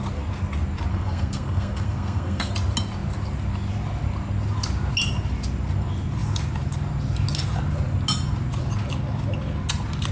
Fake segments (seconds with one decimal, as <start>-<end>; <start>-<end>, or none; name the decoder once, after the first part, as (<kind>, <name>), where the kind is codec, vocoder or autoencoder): 0.9-2.5 (codec, SNAC)